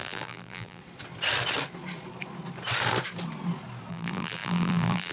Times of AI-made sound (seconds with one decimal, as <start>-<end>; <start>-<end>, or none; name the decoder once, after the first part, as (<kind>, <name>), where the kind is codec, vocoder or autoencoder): 0.0-0.8 (vocoder, BigVGAN v2); 3.9-5.1